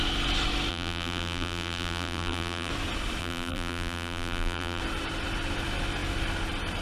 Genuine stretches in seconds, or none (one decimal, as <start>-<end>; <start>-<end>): 0.0-0.7; 2.7-3.2; 4.8-6.8